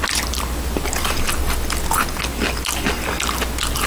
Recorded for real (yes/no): yes